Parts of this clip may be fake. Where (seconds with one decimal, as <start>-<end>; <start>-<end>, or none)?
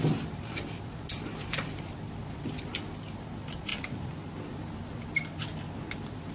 none